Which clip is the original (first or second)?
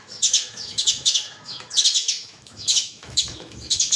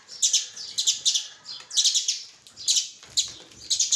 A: second